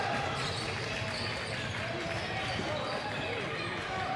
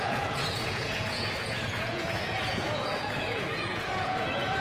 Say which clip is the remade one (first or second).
second